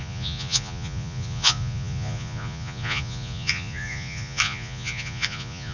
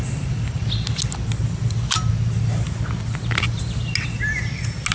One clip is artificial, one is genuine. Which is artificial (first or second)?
first